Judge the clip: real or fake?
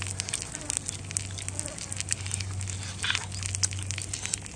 real